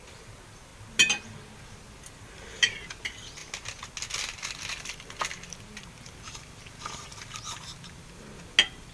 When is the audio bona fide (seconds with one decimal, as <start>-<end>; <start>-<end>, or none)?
0.0-8.9